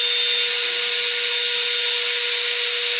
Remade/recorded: recorded